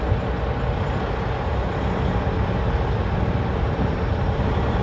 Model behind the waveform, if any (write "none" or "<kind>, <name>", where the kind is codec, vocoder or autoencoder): none